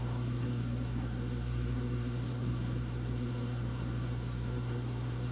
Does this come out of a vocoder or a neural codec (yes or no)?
yes